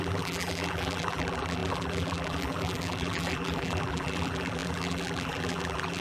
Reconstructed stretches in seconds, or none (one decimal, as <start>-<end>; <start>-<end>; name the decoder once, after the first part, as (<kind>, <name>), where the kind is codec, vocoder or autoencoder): 0.0-6.0 (vocoder, BigVGAN v2)